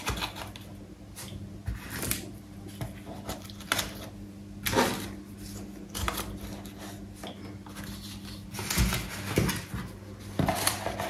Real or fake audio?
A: real